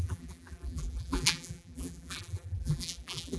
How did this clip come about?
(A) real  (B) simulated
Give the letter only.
B